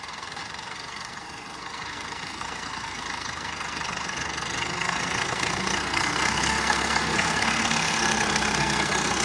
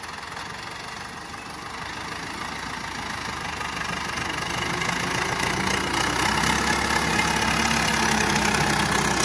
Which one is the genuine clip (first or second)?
second